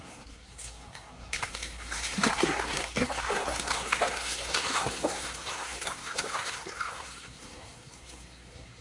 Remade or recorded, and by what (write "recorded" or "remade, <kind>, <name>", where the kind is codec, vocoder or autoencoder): remade, codec, SNAC